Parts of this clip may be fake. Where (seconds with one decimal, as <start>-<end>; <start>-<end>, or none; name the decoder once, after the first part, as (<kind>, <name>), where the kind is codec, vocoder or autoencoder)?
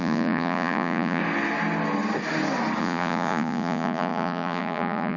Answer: 0.0-1.2 (vocoder, Vocos); 2.8-5.2